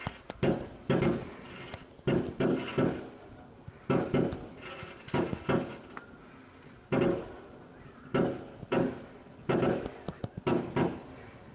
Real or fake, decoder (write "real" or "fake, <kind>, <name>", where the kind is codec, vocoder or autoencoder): real